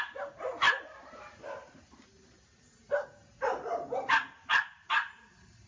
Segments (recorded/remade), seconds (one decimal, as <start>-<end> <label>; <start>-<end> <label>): 0.0-5.7 recorded